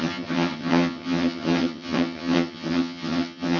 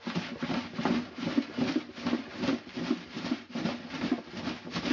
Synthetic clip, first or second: first